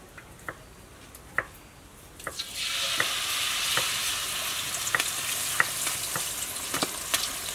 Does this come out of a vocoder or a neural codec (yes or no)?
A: no